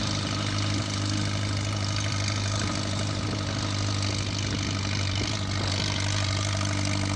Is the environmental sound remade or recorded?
recorded